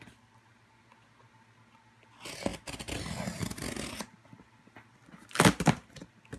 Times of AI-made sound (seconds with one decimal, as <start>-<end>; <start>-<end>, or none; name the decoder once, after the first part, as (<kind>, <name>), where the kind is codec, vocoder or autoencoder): none